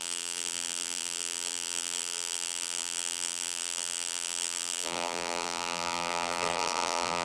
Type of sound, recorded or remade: remade